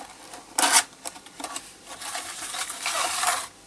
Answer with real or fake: real